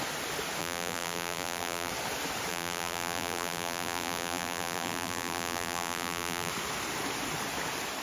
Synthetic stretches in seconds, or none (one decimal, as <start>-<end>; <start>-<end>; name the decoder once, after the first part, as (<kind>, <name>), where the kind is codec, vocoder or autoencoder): 0.6-1.9 (vocoder, BigVGAN v2); 2.5-6.5